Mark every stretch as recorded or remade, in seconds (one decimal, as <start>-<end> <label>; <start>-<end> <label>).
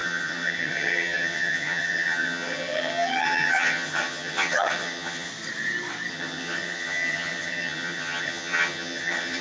0.0-5.3 remade; 5.3-6.1 recorded; 6.1-9.4 remade